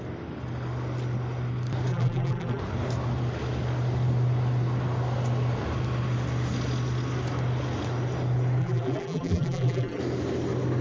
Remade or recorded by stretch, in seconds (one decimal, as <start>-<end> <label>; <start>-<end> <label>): 0.0-1.9 recorded; 1.9-2.6 remade; 2.6-8.6 recorded; 8.6-10.0 remade; 10.0-10.8 recorded